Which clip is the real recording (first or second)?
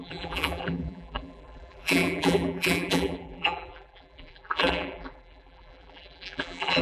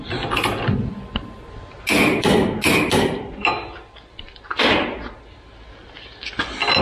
second